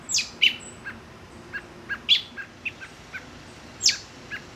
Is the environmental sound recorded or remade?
recorded